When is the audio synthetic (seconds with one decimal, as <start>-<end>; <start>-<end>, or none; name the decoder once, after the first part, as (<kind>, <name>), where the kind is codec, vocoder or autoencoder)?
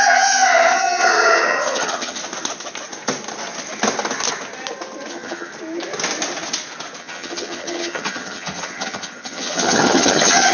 0.0-2.2 (vocoder, HiFi-GAN); 5.1-5.5; 7.0-10.5